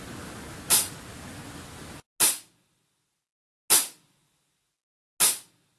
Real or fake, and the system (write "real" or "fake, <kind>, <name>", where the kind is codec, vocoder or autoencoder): real